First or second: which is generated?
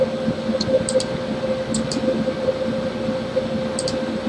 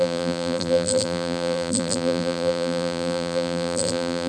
second